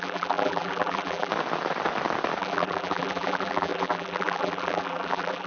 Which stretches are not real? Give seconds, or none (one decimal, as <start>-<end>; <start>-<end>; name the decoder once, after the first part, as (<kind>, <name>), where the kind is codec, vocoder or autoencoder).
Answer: 0.0-1.3 (vocoder, BigVGAN v2); 2.4-5.5